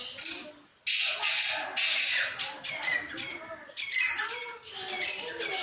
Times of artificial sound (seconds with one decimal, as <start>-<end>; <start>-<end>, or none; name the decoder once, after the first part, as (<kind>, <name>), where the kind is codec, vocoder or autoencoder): none